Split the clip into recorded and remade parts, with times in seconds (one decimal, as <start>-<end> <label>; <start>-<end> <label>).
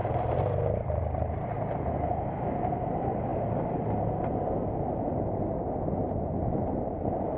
0.0-7.4 recorded